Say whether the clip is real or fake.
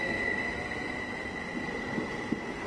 real